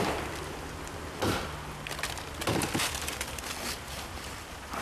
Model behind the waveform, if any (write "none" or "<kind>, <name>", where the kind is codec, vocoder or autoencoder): none